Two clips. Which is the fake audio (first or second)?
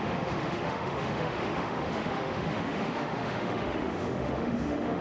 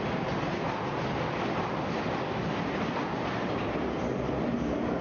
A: first